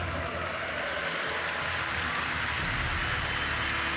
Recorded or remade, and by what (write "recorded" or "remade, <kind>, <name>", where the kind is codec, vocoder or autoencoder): recorded